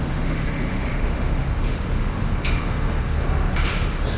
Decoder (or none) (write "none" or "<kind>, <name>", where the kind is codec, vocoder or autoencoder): autoencoder, DAC-VAE